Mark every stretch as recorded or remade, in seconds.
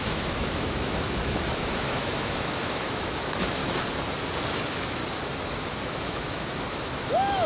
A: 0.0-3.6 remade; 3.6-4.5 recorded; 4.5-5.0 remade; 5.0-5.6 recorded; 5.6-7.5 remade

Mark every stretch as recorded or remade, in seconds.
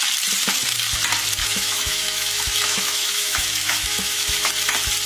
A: 0.0-1.4 recorded; 1.4-4.5 remade; 4.5-5.1 recorded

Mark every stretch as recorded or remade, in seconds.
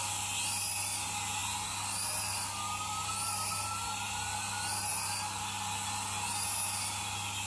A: 0.0-7.5 recorded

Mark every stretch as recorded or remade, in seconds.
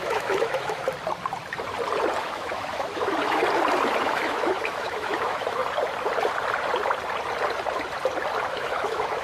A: 0.0-0.8 remade; 0.8-2.2 recorded; 2.2-3.4 remade; 3.4-4.0 recorded; 4.0-5.6 remade; 5.6-8.5 recorded; 8.5-9.2 remade